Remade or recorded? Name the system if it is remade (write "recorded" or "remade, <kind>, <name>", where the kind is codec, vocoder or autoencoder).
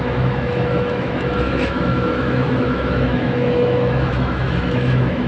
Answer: remade, autoencoder, DAC-VAE